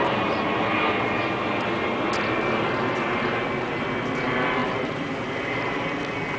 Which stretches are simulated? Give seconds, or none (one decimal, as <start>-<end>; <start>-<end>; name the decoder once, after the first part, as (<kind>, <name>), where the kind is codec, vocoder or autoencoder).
4.6-5.8 (vocoder, BigVGAN v2)